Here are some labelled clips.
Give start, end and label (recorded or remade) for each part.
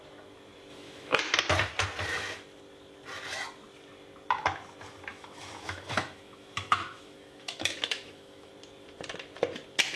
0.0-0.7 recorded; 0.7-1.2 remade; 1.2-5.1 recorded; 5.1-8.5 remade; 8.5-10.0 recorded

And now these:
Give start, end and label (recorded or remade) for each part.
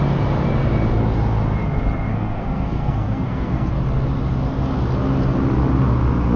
0.0-2.1 recorded; 2.1-3.7 remade; 3.7-6.4 recorded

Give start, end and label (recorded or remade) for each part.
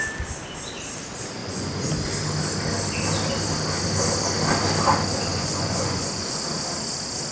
0.0-1.4 recorded; 1.4-1.9 remade; 1.9-5.3 recorded; 5.3-6.4 remade; 6.4-7.3 recorded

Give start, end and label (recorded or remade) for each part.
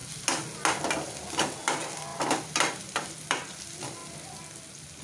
0.0-2.1 recorded; 2.1-2.8 remade; 2.8-5.0 recorded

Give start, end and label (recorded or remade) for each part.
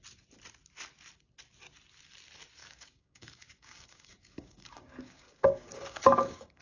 0.0-2.6 recorded; 2.6-6.6 remade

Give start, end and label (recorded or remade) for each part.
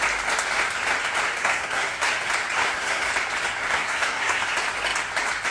0.0-1.4 recorded; 1.4-2.1 remade; 2.1-2.6 recorded; 2.6-3.1 remade; 3.1-3.7 recorded; 3.7-4.4 remade; 4.4-5.5 recorded